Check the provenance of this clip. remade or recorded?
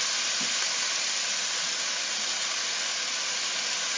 recorded